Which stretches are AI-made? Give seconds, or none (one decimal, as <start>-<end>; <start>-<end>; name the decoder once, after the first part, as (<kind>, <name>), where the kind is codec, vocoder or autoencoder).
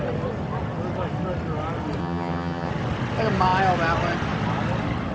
2.0-2.7 (vocoder, HiFi-GAN)